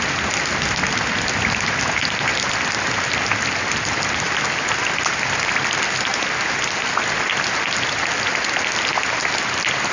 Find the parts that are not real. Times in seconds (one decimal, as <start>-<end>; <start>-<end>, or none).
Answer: none